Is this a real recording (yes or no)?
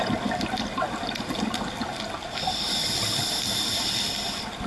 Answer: yes